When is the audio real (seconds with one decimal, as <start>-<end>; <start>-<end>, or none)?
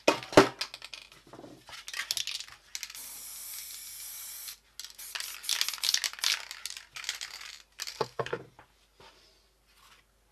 0.0-7.9; 8.4-10.3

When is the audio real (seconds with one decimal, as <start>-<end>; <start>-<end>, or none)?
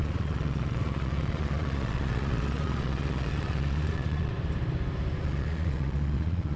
4.3-5.2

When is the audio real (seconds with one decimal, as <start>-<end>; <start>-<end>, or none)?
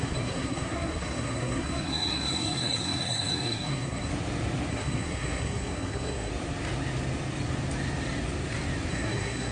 4.1-4.7; 6.3-8.9